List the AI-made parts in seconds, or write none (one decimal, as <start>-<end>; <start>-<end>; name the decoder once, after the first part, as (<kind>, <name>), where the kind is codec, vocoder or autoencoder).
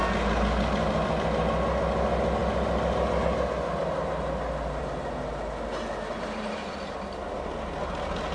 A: none